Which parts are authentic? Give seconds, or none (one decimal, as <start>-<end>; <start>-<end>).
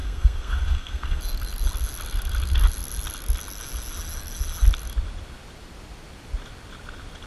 1.2-7.3